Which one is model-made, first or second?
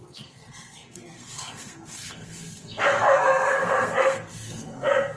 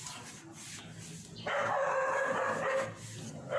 first